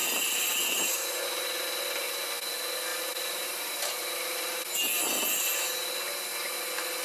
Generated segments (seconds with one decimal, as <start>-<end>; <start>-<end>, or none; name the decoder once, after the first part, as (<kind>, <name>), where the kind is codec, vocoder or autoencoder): 0.0-1.1 (vocoder, BigVGAN v2); 2.9-4.0